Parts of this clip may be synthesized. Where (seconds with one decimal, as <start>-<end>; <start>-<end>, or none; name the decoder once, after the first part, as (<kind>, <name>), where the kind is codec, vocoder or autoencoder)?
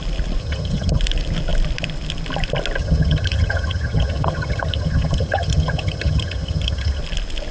0.4-1.0 (vocoder, HiFi-GAN); 2.8-7.0